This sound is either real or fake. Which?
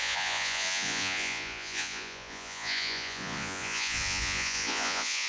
fake